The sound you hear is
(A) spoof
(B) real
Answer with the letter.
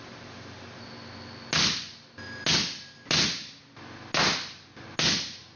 B